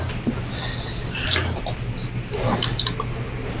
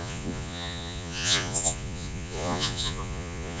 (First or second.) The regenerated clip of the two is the second